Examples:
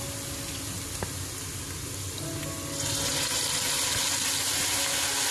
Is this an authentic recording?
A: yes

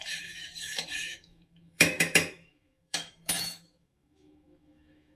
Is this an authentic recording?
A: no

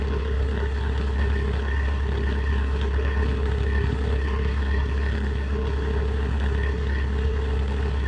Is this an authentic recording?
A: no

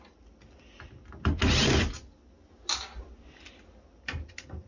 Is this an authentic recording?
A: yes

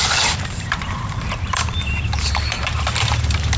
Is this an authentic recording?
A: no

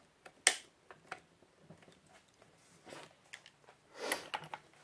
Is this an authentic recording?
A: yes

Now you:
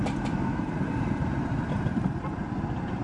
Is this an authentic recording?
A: no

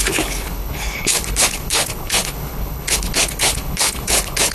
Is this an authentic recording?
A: no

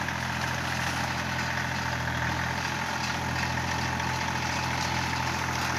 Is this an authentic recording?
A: yes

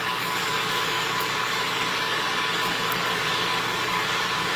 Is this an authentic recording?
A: no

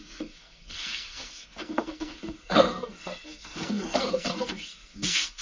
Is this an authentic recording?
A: no